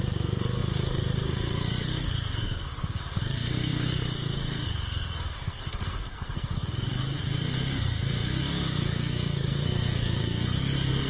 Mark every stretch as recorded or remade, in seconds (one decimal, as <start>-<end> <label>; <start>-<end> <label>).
0.0-11.1 remade